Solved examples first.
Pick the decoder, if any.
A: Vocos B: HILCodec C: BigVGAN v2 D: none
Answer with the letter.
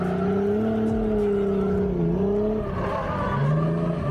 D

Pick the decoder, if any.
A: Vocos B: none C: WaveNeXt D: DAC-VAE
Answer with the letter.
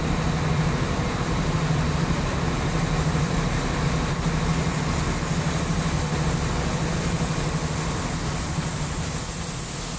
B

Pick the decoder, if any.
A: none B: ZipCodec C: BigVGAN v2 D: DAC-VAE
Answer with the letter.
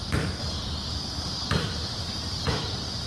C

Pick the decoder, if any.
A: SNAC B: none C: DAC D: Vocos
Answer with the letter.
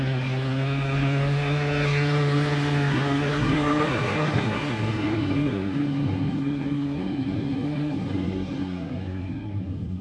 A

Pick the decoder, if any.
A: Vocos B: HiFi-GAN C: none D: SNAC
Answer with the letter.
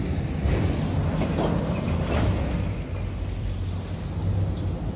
C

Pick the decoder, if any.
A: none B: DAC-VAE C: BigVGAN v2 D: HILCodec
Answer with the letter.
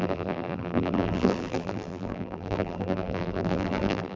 C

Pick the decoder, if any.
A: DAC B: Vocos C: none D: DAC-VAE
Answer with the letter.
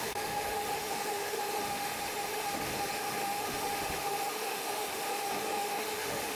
D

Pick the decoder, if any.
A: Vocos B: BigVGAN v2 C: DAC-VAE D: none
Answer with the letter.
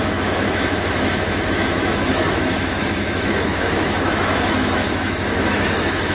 C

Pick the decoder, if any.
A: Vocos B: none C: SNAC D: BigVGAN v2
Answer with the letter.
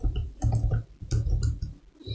B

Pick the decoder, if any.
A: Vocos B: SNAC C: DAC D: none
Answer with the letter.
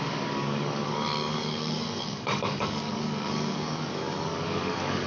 C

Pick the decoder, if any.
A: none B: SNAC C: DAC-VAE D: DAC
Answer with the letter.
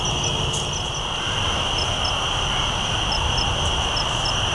A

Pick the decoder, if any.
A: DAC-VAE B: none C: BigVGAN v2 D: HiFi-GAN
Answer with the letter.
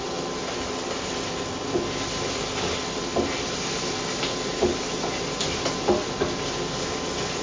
B